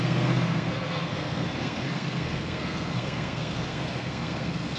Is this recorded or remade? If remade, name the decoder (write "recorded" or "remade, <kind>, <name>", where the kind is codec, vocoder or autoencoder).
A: remade, codec, SNAC